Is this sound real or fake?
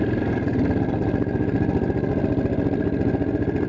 real